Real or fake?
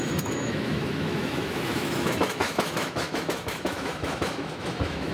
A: fake